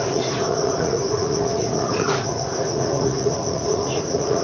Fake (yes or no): yes